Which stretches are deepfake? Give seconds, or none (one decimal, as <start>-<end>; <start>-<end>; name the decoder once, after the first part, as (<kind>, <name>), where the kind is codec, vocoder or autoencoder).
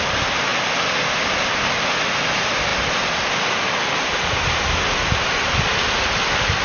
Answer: none